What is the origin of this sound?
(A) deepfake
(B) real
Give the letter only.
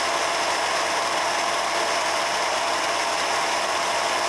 B